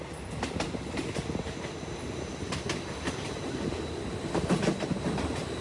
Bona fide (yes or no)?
yes